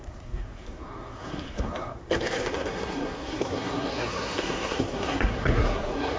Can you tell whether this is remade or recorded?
remade